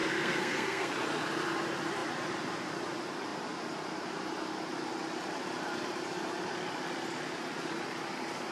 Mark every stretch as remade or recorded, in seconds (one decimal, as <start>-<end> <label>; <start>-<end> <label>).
0.0-0.9 remade; 0.9-8.5 recorded